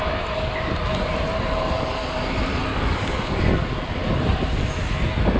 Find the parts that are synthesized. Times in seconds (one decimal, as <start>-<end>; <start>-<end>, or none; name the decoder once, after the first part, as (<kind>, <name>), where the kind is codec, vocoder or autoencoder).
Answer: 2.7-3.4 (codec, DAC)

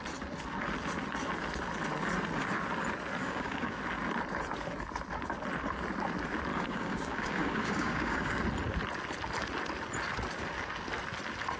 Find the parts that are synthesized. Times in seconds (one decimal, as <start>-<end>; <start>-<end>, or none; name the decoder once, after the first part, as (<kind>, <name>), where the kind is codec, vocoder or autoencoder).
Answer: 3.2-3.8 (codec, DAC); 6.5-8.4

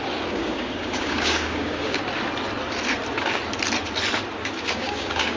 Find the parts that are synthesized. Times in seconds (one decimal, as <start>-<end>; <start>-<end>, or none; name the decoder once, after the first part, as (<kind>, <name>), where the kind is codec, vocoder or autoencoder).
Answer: 0.0-2.0 (codec, DAC); 4.4-5.4

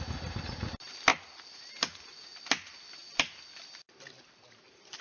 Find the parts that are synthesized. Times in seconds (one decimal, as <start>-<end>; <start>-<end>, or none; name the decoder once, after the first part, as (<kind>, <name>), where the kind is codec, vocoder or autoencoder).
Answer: none